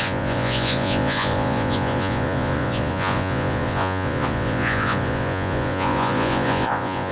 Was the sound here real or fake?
fake